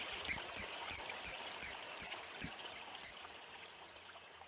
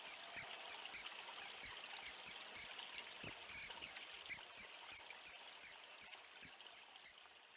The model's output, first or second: first